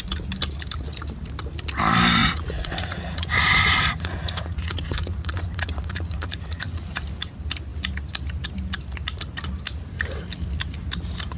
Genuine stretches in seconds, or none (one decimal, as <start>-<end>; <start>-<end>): 0.0-2.2; 7.0-11.4